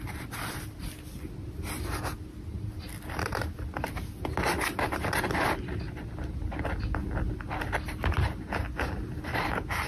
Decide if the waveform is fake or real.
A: real